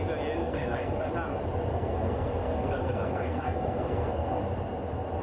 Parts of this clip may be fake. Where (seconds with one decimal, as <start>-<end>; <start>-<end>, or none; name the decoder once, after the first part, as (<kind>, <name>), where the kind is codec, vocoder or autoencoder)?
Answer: 0.4-1.1 (codec, SNAC); 1.7-4.4